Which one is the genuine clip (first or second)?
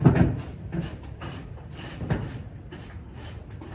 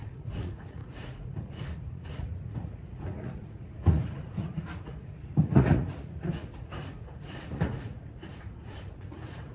first